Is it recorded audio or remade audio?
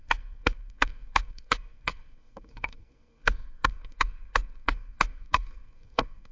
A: remade